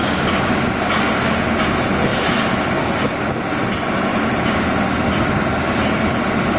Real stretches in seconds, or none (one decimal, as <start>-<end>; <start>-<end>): 0.0-4.1; 4.7-6.6